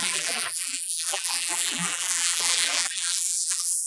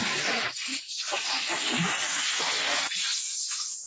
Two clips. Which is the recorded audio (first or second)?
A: second